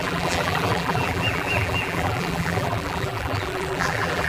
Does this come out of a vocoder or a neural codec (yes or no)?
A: yes